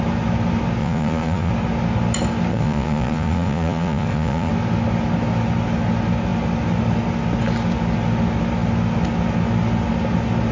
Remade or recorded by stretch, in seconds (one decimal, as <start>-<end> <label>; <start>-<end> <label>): 0.0-0.8 recorded; 0.8-1.5 remade; 1.5-2.5 recorded; 2.5-4.5 remade; 4.5-10.5 recorded